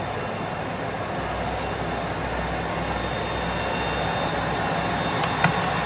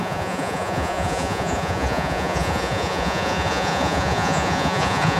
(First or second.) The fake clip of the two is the second